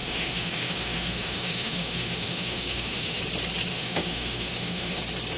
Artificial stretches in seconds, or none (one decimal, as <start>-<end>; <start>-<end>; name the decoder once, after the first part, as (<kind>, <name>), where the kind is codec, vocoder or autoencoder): 0.0-3.2 (autoencoder, DAC-VAE); 3.7-5.0